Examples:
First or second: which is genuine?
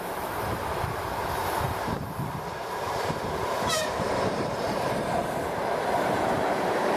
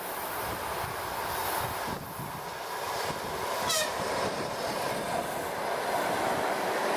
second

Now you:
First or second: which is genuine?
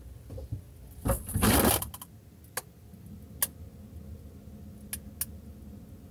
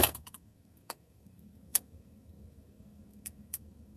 first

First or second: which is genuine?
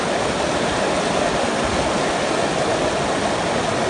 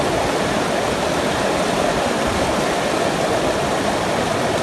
first